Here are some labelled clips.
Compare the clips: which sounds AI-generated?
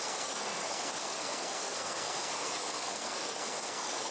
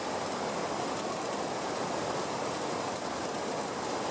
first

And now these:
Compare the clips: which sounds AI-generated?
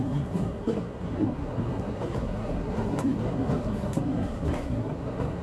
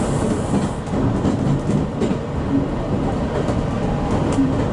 first